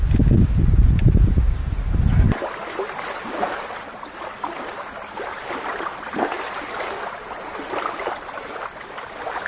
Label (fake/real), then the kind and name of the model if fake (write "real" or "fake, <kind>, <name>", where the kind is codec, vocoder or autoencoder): real